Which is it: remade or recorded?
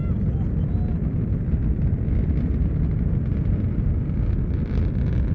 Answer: recorded